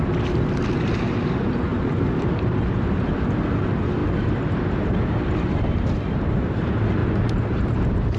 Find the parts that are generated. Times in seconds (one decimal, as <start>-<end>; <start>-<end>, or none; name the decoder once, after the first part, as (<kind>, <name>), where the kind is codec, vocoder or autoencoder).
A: none